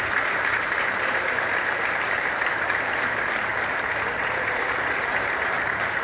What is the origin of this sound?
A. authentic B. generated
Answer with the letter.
B